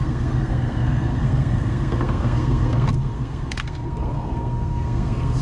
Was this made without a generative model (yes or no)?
no